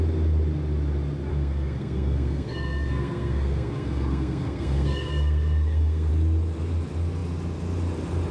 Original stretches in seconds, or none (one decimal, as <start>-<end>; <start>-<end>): 0.0-1.3; 6.1-8.3